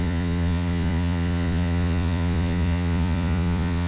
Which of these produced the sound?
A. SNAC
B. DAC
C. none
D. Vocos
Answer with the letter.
D